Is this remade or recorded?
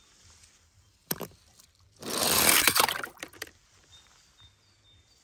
remade